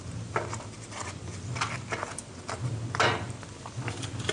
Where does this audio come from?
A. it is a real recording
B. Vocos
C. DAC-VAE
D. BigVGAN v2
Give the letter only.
A